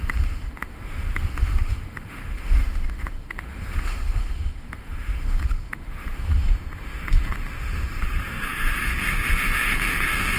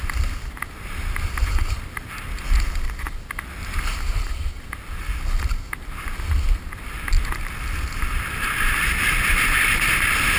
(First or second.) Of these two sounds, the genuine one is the second